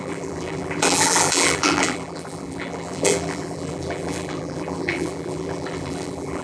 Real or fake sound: fake